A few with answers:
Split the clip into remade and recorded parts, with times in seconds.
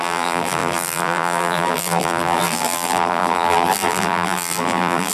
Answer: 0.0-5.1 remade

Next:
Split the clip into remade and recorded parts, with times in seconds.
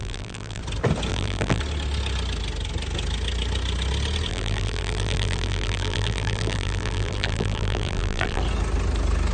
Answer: 0.0-0.6 remade; 0.6-1.1 recorded; 1.1-1.6 remade; 1.6-4.3 recorded; 4.3-8.4 remade; 8.4-9.3 recorded